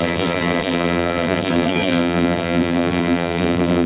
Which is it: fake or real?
fake